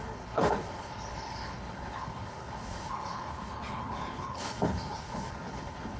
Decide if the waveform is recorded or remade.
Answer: remade